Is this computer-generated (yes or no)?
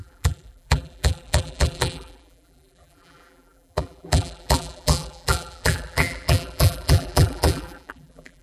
yes